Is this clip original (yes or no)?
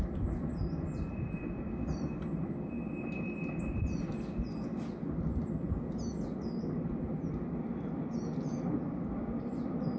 yes